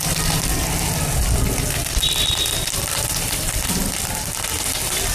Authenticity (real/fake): real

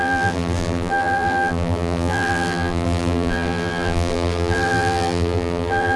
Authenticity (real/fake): fake